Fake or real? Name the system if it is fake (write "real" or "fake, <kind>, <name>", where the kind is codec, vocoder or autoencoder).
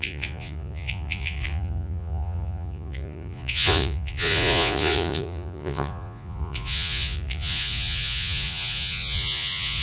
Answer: fake, vocoder, Vocos